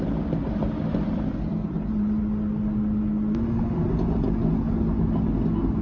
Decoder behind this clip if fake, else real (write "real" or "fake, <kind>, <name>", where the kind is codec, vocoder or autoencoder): real